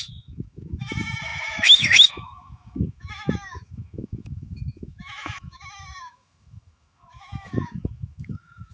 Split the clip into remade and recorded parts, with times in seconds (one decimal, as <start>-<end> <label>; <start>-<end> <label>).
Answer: 0.0-8.7 remade